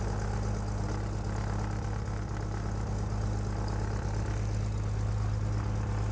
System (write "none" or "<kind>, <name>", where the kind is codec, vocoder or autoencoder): none